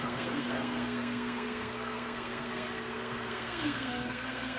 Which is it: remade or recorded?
remade